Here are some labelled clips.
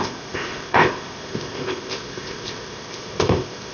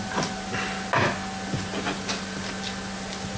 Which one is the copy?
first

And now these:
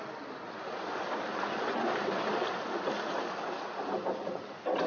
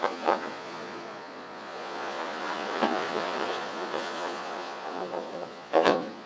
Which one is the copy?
second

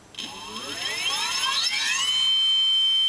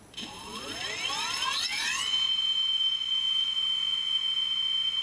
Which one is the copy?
second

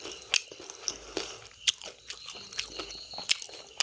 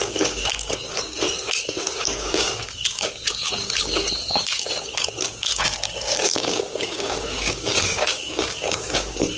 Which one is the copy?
second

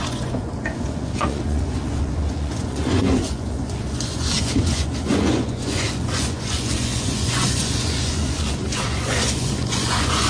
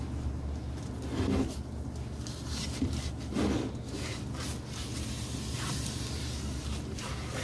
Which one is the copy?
first